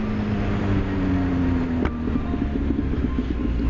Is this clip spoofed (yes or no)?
no